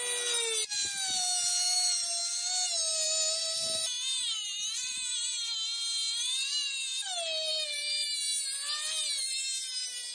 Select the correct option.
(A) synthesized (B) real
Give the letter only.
B